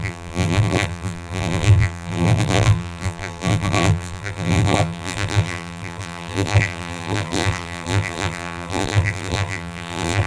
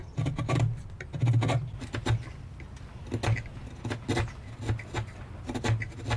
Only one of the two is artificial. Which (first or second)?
first